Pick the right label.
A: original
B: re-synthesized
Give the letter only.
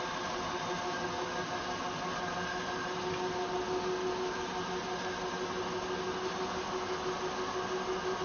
A